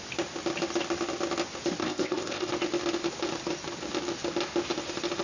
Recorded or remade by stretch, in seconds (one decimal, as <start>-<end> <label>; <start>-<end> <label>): 0.0-1.8 recorded; 1.8-2.5 remade; 2.5-5.2 recorded